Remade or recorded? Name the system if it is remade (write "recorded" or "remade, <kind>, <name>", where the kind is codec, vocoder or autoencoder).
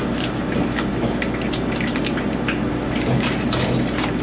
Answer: recorded